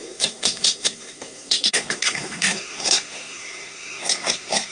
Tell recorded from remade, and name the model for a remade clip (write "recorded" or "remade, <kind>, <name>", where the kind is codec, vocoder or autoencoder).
remade, codec, SNAC